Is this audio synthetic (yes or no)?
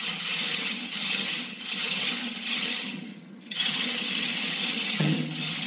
yes